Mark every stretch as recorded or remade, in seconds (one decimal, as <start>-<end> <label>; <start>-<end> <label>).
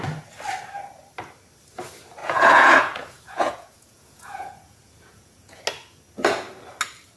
0.0-2.2 recorded; 2.2-5.6 remade; 5.6-7.2 recorded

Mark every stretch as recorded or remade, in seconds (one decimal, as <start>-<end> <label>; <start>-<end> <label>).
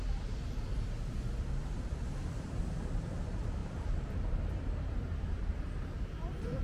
0.0-1.6 recorded; 1.6-2.6 remade; 2.6-3.6 recorded; 3.6-6.6 remade